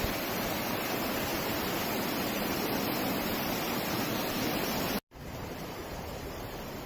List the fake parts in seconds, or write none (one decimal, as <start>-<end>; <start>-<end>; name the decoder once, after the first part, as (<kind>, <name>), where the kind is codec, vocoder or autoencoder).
none